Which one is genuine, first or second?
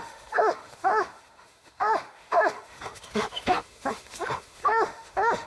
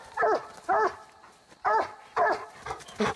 second